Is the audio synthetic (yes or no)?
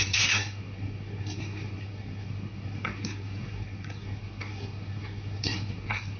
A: yes